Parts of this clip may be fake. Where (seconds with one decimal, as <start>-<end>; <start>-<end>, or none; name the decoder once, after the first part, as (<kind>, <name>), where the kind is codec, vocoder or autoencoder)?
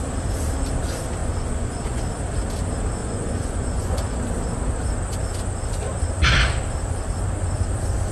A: 1.2-2.0 (vocoder, Vocos); 3.0-4.0